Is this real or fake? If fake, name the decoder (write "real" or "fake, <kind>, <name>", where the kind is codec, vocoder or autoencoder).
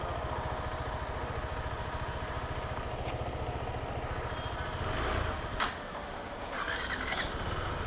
real